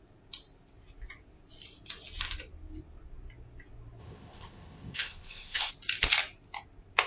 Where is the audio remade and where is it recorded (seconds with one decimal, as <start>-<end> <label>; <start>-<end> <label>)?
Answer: 0.0-4.0 recorded; 4.0-5.7 remade; 5.7-7.1 recorded